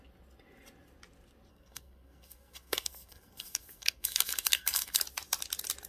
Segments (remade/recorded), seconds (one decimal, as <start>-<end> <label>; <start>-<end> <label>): 0.0-1.5 recorded; 1.5-5.0 remade; 5.0-5.9 recorded

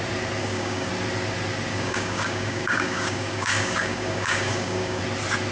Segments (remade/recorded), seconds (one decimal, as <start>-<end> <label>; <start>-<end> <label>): 0.0-0.4 recorded; 0.4-0.9 remade; 0.9-1.7 recorded; 1.7-5.0 remade; 5.0-5.5 recorded

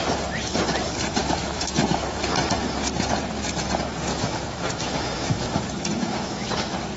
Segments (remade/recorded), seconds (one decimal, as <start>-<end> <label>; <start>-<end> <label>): 0.0-1.2 recorded; 1.2-2.2 remade; 2.2-4.1 recorded; 4.1-6.5 remade; 6.5-7.0 recorded

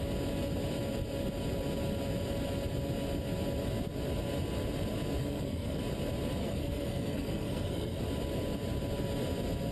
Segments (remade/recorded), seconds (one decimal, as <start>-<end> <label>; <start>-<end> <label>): 0.0-5.2 recorded; 5.2-5.8 remade; 5.8-6.4 recorded; 6.4-8.0 remade; 8.0-9.7 recorded

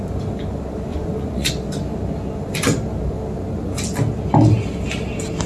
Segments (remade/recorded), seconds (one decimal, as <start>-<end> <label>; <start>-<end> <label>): 0.0-0.9 recorded; 0.9-1.5 remade; 1.5-5.5 recorded

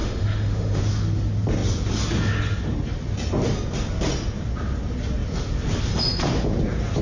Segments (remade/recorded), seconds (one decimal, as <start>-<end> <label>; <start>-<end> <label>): 0.0-0.8 remade; 0.8-7.0 recorded

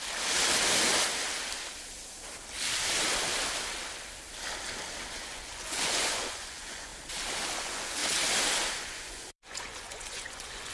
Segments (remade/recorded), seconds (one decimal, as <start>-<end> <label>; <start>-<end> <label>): 0.0-5.1 recorded; 5.1-6.9 remade; 6.9-7.6 recorded; 7.6-8.0 remade; 8.0-8.8 recorded; 8.8-10.7 remade

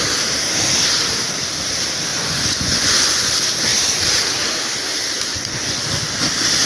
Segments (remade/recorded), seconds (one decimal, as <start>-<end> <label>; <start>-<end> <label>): 0.0-2.1 recorded; 2.1-3.3 remade; 3.3-5.3 recorded; 5.3-5.8 remade; 5.8-6.7 recorded